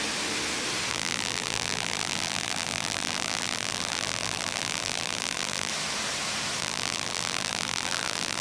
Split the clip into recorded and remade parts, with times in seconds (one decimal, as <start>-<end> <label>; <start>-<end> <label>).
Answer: 0.0-0.9 recorded; 0.9-5.7 remade; 5.7-6.6 recorded; 6.6-8.4 remade